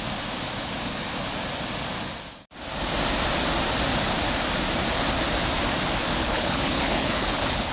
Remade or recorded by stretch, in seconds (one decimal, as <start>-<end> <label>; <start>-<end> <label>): 0.0-6.2 recorded; 6.2-7.7 remade